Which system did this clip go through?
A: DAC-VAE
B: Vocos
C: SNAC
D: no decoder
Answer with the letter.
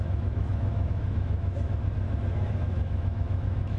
A